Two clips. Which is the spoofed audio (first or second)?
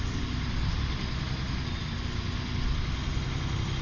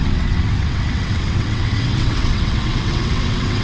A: second